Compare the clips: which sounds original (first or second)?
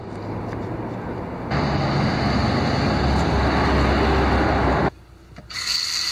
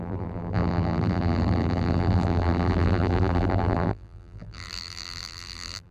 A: first